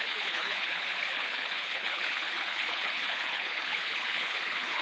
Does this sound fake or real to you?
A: fake